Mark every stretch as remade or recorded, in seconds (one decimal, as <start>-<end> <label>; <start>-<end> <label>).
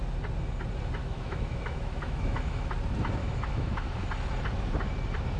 0.0-1.0 recorded; 1.0-2.7 remade; 2.7-3.2 recorded; 3.2-4.1 remade; 4.1-5.4 recorded